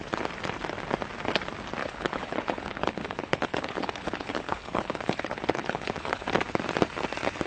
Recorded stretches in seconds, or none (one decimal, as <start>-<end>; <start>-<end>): 0.0-1.8; 6.3-7.5